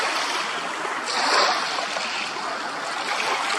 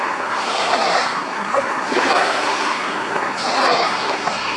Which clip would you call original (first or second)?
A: first